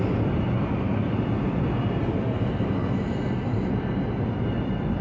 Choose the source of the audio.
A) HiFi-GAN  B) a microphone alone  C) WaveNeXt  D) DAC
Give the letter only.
B